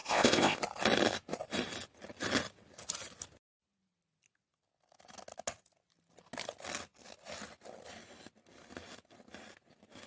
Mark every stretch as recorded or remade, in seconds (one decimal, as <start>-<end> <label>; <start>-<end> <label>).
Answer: 0.0-0.6 remade; 0.6-10.1 recorded